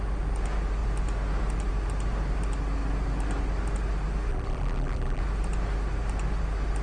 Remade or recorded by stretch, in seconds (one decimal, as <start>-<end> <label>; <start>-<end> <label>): 0.0-4.3 recorded; 4.3-5.2 remade; 5.2-6.8 recorded